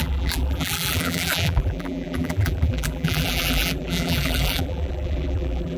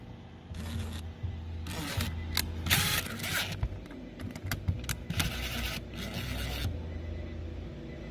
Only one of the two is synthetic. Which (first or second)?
first